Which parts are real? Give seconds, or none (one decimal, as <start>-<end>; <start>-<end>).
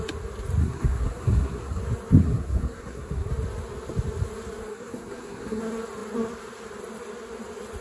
0.0-0.6; 1.8-2.2; 3.3-4.7; 5.6-7.8